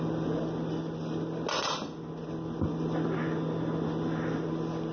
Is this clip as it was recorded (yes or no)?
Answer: yes